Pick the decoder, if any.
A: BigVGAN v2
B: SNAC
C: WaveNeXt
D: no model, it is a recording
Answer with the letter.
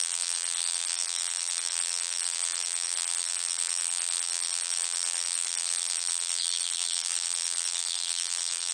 A